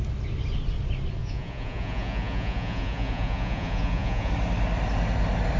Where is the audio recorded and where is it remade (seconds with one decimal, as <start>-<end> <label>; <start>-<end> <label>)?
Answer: 0.0-1.2 recorded; 1.2-4.3 remade; 4.3-5.6 recorded